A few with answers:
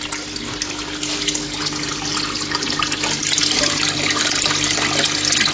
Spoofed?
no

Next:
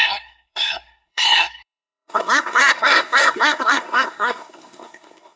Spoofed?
yes